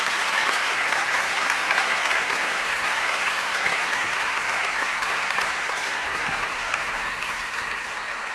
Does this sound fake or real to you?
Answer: fake